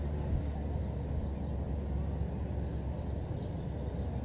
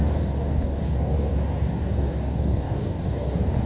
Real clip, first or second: first